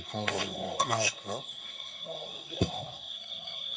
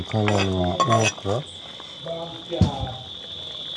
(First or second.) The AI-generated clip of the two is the first